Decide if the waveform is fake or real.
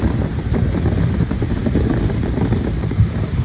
fake